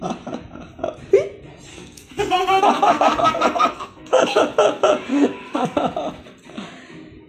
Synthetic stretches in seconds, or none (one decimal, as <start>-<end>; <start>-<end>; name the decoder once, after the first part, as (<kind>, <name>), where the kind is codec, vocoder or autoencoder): 1.7-4.4 (codec, SNAC); 5.1-5.8